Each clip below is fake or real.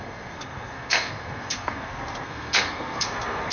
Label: fake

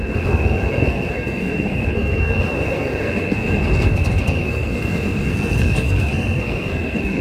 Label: fake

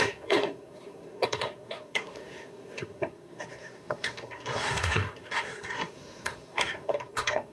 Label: fake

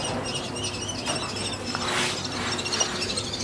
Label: real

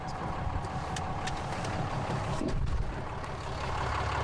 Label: real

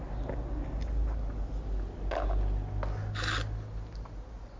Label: real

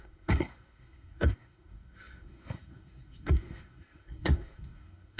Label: fake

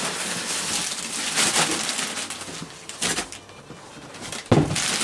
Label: real